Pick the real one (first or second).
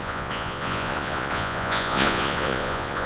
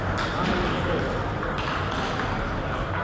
second